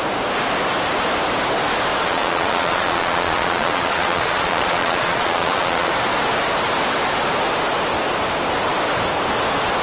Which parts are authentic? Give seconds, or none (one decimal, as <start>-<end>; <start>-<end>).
0.0-2.0; 5.9-9.8